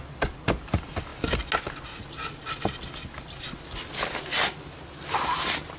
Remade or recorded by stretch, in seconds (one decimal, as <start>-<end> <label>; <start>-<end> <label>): 0.0-5.8 recorded